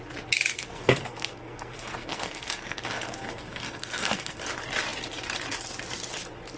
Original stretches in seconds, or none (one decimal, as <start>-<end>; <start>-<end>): 0.0-0.5; 4.4-6.6